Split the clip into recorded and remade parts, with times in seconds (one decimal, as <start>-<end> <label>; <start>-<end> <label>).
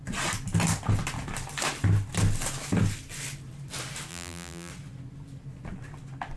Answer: 0.0-4.1 recorded; 4.1-4.7 remade; 4.7-6.4 recorded